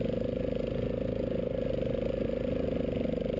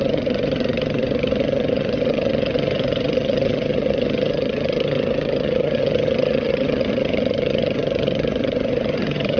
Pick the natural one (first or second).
first